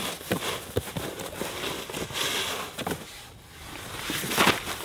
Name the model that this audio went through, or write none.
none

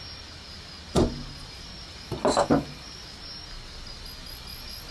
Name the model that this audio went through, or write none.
none